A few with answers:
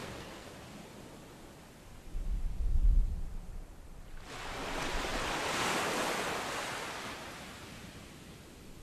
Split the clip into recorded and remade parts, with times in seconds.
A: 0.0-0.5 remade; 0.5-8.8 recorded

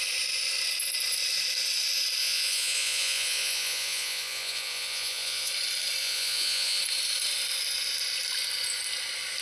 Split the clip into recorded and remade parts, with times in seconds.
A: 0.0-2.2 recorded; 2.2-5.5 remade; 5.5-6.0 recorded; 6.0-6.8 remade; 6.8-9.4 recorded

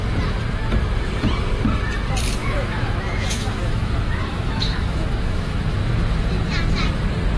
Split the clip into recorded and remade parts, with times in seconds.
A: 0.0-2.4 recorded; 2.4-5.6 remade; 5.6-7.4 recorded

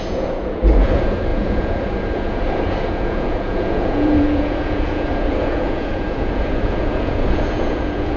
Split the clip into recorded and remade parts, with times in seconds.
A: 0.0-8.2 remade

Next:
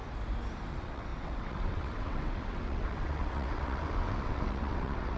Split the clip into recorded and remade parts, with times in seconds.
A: 0.0-0.7 recorded; 0.7-5.2 remade